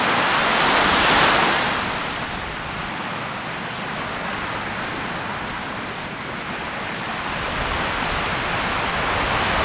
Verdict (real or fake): real